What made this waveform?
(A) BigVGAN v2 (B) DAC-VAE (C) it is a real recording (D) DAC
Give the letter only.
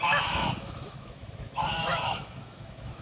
B